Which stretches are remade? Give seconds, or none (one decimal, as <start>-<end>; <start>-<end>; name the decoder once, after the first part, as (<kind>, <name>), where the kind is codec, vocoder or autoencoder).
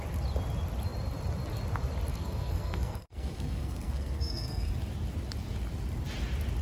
2.1-4.7 (codec, SNAC)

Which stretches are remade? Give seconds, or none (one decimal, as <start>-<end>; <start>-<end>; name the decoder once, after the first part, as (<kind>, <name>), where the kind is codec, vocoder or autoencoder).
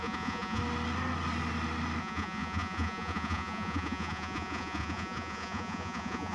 0.0-0.6 (vocoder, Vocos); 2.0-6.3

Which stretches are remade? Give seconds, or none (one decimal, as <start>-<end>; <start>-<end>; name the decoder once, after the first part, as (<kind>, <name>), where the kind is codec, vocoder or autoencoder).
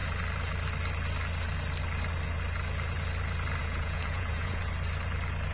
3.6-4.6 (vocoder, Vocos)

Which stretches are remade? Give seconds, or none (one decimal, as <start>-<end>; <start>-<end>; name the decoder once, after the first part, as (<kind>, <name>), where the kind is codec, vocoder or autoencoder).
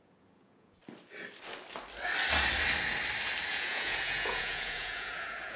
0.0-0.8 (vocoder, Vocos); 3.5-5.6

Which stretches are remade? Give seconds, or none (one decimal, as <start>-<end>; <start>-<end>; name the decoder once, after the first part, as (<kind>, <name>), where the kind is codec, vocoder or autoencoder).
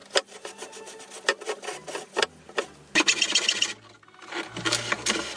none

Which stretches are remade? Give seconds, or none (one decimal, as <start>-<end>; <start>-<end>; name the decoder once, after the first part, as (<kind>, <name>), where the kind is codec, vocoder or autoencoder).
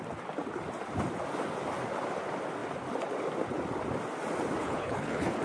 4.6-5.4 (codec, HILCodec)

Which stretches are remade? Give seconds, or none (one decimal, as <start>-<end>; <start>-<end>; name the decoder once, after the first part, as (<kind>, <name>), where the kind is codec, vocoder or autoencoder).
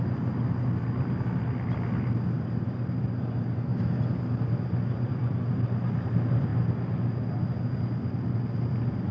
none